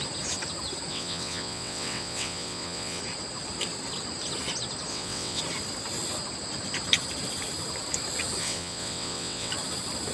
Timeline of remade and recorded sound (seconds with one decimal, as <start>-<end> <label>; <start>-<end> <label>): 0.0-0.9 recorded; 0.9-3.0 remade; 3.0-4.9 recorded; 4.9-5.4 remade; 5.4-8.4 recorded; 8.4-9.5 remade; 9.5-10.1 recorded